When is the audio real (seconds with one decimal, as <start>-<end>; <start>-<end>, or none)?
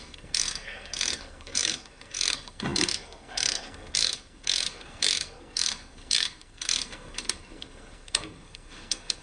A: none